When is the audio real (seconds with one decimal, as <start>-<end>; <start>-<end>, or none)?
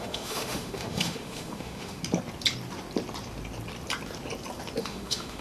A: 2.0-4.8